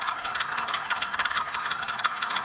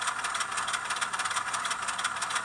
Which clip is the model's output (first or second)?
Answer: first